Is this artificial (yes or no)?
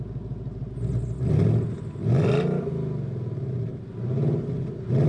no